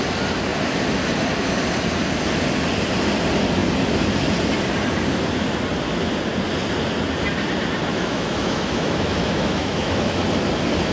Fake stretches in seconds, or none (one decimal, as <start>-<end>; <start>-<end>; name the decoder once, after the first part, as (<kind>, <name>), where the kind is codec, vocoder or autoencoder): 7.9-10.2 (autoencoder, DAC-VAE)